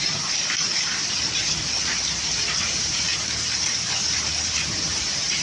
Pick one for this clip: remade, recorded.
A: remade